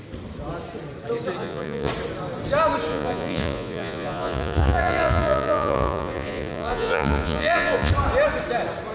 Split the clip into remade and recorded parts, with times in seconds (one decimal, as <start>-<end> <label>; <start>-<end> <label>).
0.0-1.4 recorded; 1.4-1.9 remade; 1.9-2.9 recorded; 2.9-7.9 remade; 7.9-8.9 recorded